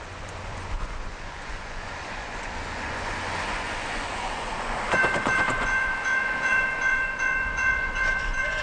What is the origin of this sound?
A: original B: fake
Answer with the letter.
B